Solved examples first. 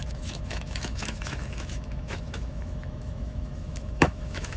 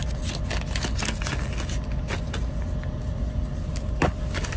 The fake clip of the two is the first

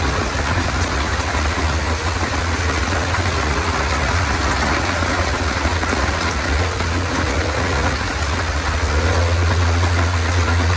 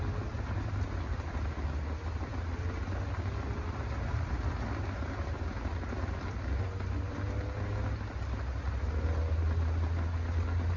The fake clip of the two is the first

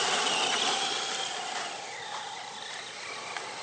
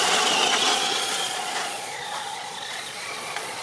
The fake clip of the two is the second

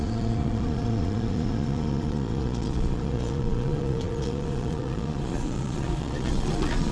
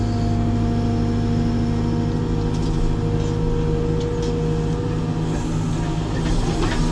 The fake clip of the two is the first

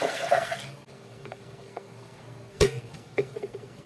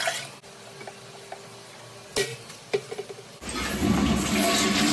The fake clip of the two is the first